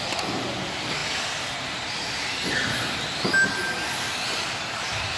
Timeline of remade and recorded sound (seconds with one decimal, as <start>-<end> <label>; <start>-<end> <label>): 0.0-5.2 recorded